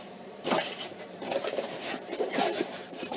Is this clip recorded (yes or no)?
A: no